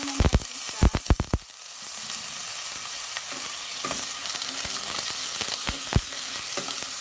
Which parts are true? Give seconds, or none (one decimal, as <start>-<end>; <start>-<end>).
0.0-5.2; 6.3-7.0